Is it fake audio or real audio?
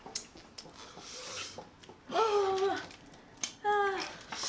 real